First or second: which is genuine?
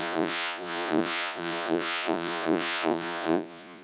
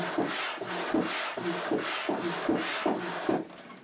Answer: second